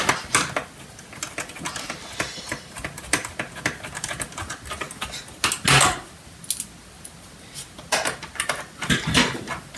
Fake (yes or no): no